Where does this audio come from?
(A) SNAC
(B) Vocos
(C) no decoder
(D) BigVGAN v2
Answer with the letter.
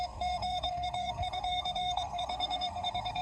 A